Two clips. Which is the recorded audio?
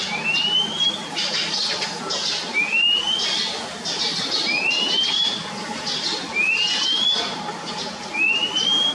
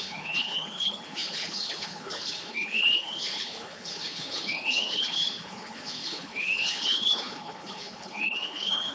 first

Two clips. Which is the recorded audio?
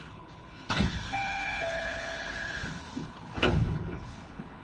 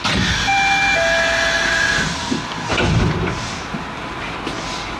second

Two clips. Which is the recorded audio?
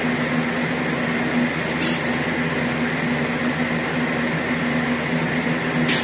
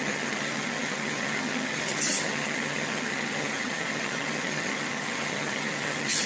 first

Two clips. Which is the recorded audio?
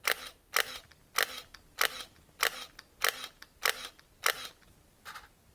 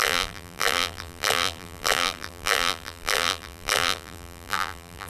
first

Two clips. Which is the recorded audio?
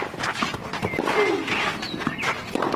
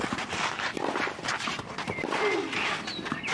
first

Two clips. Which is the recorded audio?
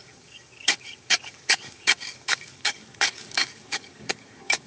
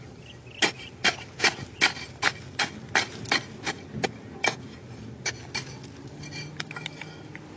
second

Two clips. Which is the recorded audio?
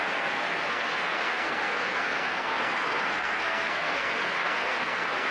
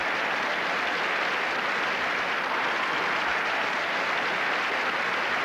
second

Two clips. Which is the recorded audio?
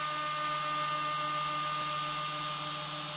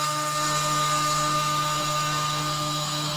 first